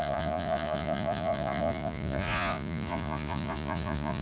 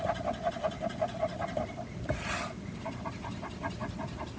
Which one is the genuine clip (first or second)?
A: second